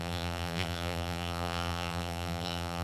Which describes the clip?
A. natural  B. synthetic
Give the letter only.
B